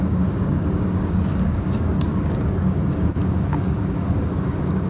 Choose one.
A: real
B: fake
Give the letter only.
B